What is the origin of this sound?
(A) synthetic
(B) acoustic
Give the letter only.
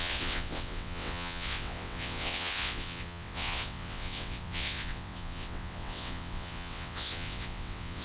A